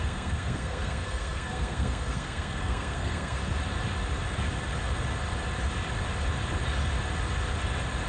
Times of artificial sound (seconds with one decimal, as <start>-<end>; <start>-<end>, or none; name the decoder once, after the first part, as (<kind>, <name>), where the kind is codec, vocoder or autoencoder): 0.0-3.4 (codec, SNAC)

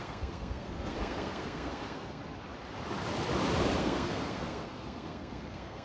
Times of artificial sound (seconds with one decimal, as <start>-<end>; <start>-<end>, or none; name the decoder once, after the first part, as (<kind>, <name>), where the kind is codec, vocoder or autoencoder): 0.0-2.2 (codec, SNAC); 3.8-5.8

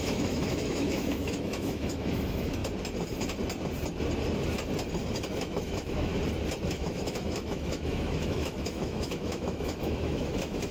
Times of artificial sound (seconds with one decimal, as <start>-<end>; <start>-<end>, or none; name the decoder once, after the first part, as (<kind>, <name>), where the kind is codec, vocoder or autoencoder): 0.0-2.6 (autoencoder, DAC-VAE); 5.3-6.1; 6.7-10.7

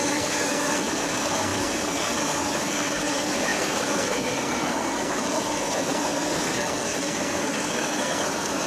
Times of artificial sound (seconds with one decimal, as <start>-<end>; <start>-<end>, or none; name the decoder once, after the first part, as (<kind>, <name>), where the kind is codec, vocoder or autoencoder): 0.0-8.7 (codec, SNAC)

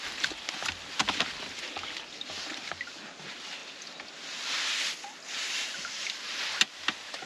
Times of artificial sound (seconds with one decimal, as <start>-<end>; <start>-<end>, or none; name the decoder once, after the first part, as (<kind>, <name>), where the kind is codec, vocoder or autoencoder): none